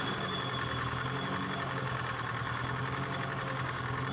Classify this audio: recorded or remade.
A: remade